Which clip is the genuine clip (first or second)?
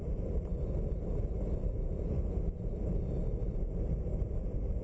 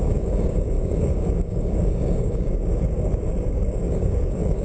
first